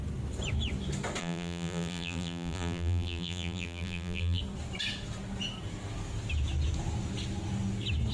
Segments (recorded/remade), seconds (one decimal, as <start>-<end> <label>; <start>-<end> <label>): 0.0-1.2 recorded; 1.2-4.4 remade; 4.4-8.1 recorded